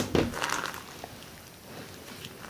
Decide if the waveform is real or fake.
real